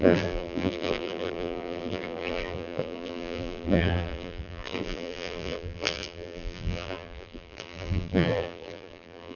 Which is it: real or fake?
fake